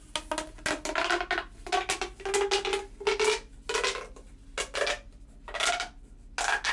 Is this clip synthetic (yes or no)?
no